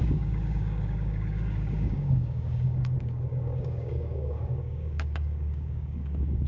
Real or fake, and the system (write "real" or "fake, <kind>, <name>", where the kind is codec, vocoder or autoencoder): fake, codec, DAC